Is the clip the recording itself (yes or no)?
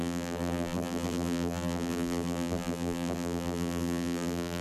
no